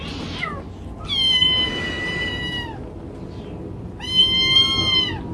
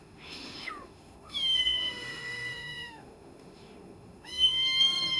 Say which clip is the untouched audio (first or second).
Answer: first